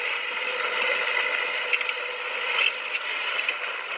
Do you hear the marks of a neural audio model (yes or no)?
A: no